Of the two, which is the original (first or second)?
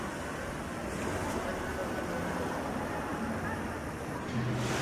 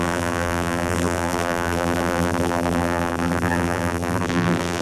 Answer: first